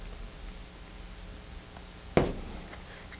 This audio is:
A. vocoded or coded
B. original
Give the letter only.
B